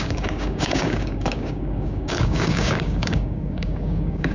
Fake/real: fake